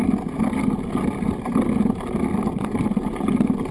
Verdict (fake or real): real